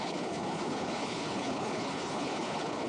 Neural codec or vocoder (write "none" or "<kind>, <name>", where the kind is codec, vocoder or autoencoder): codec, HILCodec